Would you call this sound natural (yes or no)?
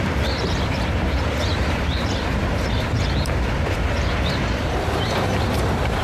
no